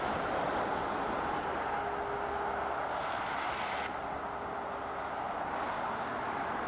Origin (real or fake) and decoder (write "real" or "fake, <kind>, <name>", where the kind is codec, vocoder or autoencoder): real